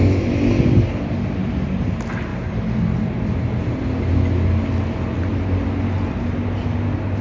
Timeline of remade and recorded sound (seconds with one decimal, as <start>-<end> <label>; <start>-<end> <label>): 0.0-7.2 recorded